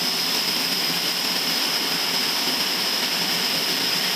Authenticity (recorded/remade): remade